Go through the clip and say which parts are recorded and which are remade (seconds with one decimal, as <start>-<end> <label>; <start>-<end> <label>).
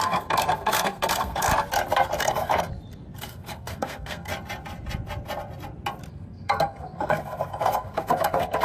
0.0-1.5 remade; 1.5-2.2 recorded; 2.2-2.7 remade; 2.7-3.2 recorded; 3.2-4.3 remade; 4.3-6.1 recorded; 6.1-8.6 remade